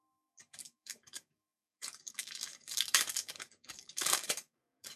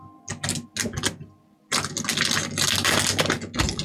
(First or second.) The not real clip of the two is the first